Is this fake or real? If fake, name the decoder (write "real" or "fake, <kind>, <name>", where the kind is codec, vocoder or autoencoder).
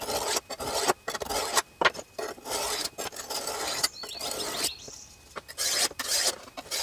real